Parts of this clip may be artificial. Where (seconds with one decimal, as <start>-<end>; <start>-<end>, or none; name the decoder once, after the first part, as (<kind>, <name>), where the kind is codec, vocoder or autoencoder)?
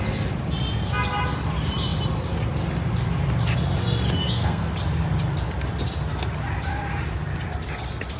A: 4.2-4.7 (codec, SNAC)